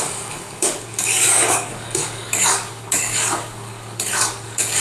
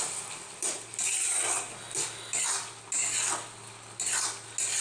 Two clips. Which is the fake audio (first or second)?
first